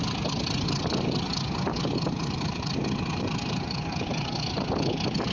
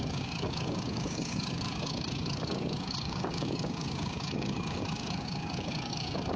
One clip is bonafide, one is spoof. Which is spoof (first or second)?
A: second